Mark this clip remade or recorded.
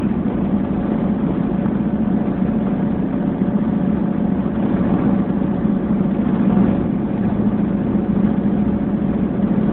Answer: recorded